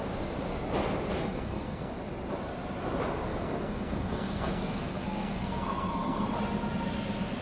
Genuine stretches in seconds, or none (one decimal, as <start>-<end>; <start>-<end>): 0.0-1.2; 1.9-3.3; 6.3-7.4